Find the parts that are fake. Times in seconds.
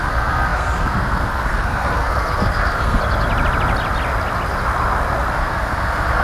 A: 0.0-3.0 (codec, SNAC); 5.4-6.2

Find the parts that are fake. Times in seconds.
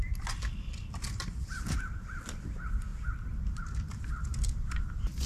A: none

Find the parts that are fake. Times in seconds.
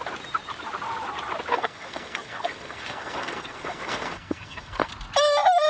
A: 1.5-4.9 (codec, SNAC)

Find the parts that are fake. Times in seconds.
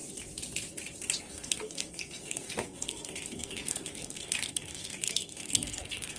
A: 1.2-6.2 (codec, SNAC)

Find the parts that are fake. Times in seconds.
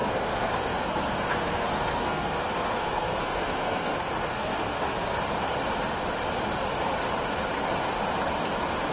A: 0.0-5.2 (codec, SNAC)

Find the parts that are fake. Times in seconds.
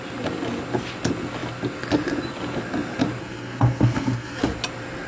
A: 3.2-4.4 (codec, SNAC)